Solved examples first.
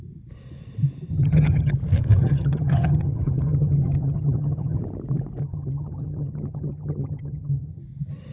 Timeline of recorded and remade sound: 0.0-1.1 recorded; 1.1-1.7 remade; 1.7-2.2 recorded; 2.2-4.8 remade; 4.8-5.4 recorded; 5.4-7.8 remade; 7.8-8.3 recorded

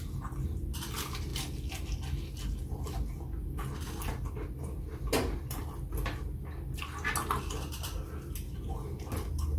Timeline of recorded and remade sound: 0.0-9.6 recorded

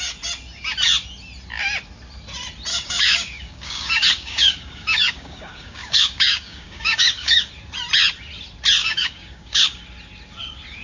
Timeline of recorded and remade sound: 0.0-2.7 recorded; 2.7-7.5 remade; 7.5-8.8 recorded; 8.8-9.8 remade; 9.8-10.8 recorded